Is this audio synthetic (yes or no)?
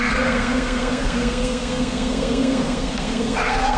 yes